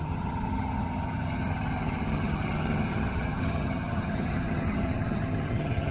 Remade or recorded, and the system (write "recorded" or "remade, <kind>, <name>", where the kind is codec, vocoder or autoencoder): remade, vocoder, HiFi-GAN